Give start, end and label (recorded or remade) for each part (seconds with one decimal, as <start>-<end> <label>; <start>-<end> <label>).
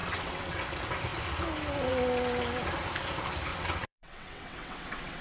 0.0-0.6 remade; 0.6-3.5 recorded; 3.5-5.2 remade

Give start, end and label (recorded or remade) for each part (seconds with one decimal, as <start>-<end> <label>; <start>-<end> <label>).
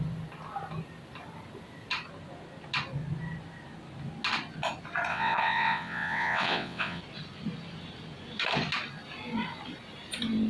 0.0-5.1 recorded; 5.1-7.0 remade; 7.0-10.5 recorded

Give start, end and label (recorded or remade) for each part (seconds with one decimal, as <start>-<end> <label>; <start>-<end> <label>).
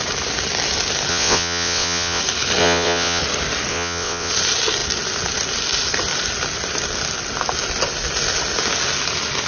0.0-1.1 recorded; 1.1-2.2 remade; 2.2-2.6 recorded; 2.6-3.2 remade; 3.2-3.7 recorded; 3.7-4.3 remade; 4.3-9.5 recorded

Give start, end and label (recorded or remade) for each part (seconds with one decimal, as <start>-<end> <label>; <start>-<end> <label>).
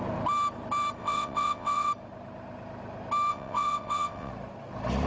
0.0-1.0 recorded; 1.0-1.9 remade; 1.9-3.3 recorded; 3.3-4.3 remade; 4.3-5.1 recorded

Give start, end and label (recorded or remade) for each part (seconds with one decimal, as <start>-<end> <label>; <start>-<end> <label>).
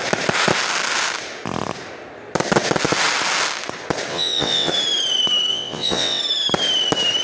0.0-4.1 recorded; 4.1-4.7 remade; 4.7-5.5 recorded; 5.5-6.2 remade; 6.2-7.2 recorded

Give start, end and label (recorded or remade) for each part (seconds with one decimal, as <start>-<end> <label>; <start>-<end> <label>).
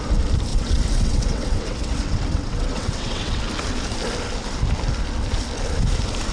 0.0-0.5 recorded; 0.5-3.4 remade; 3.4-6.3 recorded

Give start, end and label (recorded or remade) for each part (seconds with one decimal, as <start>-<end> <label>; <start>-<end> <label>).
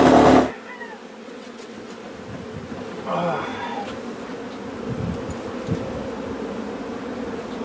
0.0-1.2 recorded; 1.2-1.9 remade; 1.9-7.6 recorded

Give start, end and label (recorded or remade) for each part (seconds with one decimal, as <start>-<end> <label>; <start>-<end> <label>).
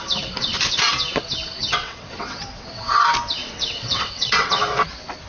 0.0-1.8 recorded; 1.8-2.9 remade; 2.9-3.4 recorded; 3.4-4.5 remade; 4.5-5.3 recorded